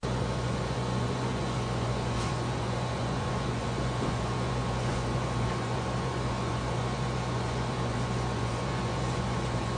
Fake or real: fake